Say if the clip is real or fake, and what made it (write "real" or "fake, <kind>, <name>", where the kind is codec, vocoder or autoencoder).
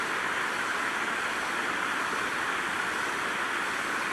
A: real